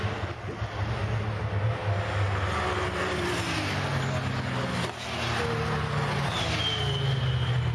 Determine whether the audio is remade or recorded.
recorded